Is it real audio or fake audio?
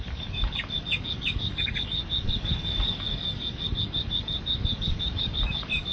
fake